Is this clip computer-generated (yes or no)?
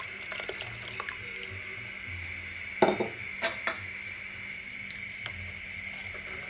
no